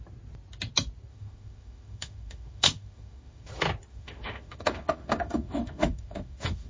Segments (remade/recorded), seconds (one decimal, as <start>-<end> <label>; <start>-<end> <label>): 0.0-1.1 recorded; 1.1-3.5 remade; 3.5-3.9 recorded; 3.9-6.7 remade